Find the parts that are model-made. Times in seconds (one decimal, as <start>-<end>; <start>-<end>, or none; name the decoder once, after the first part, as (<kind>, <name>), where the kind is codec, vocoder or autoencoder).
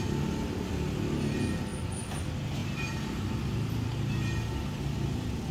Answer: 1.7-2.2 (vocoder, BigVGAN v2); 2.6-3.4